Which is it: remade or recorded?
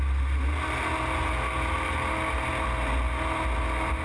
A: recorded